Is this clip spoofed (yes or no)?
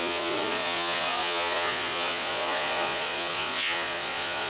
yes